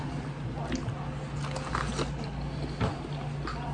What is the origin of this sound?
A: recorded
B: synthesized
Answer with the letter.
A